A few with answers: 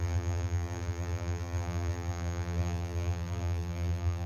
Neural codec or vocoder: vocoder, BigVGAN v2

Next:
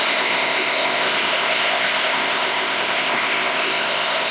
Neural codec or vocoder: codec, ZipCodec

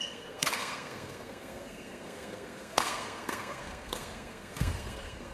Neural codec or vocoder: codec, SNAC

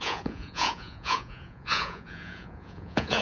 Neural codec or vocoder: vocoder, Vocos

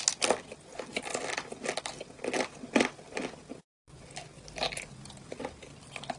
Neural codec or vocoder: none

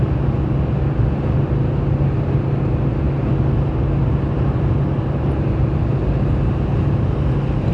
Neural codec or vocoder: none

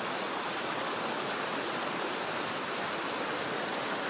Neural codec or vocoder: none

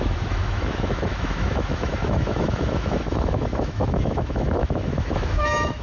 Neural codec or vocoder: autoencoder, DAC-VAE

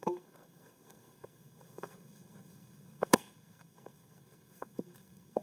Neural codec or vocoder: codec, SNAC